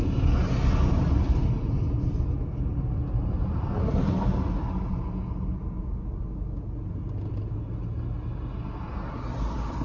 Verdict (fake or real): real